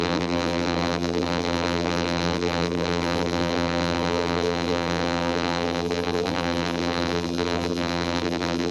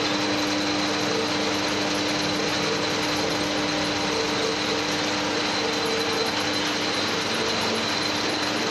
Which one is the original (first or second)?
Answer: second